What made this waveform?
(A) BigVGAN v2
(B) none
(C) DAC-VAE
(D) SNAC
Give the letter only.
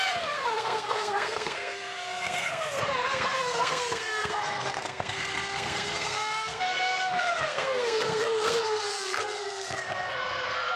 D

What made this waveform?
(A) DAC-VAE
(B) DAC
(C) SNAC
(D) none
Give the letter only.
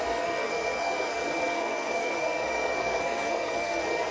C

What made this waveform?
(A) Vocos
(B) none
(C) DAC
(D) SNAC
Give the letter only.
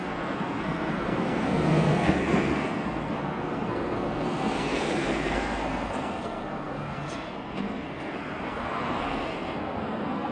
D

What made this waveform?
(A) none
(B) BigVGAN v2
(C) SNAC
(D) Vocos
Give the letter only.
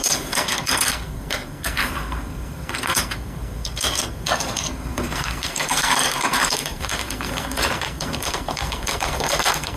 C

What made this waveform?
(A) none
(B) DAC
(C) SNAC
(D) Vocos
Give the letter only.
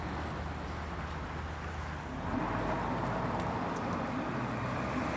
A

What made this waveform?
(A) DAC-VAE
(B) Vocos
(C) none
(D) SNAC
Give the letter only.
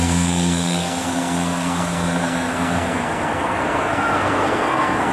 D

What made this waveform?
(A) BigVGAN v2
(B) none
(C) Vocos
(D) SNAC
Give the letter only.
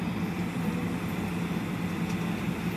B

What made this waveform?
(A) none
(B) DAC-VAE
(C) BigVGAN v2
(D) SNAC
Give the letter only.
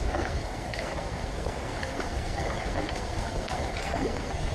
D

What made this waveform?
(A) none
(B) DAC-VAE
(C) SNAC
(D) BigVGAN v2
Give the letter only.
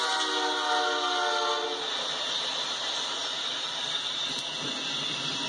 A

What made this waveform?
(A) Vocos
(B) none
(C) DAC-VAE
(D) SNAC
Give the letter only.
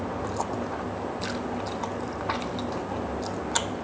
B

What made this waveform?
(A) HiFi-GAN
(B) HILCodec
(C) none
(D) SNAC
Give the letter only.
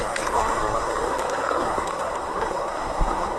D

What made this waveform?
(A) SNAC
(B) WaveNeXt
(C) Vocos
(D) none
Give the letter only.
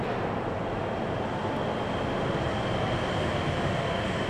D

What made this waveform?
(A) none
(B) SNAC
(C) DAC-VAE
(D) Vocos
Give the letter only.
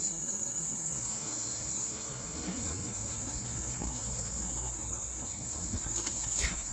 B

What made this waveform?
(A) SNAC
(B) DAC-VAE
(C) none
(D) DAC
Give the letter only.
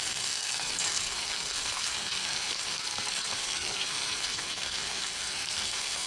A